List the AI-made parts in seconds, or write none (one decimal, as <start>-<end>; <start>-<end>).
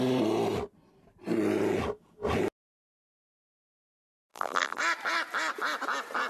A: 4.3-4.8